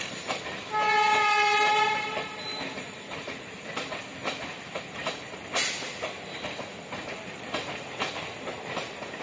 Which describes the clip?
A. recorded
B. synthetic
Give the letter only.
A